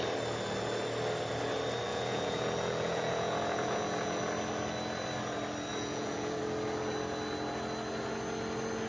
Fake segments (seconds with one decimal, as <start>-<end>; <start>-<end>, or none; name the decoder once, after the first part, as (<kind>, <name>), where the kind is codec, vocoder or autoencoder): 1.9-4.2 (vocoder, Vocos); 5.7-6.4